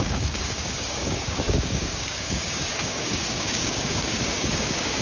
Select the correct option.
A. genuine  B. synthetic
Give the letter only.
B